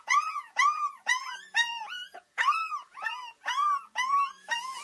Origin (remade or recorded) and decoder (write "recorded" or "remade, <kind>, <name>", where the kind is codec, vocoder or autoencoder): remade, vocoder, Vocos